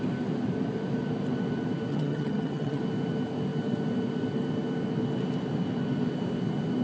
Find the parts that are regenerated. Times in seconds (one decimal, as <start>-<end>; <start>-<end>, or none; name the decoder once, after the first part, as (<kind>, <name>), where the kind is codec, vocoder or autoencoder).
1.9-2.8 (vocoder, HiFi-GAN)